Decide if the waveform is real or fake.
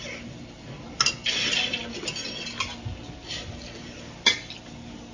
real